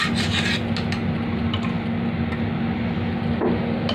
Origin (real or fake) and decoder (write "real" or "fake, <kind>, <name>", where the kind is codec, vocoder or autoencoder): real